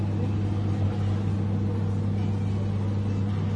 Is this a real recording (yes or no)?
yes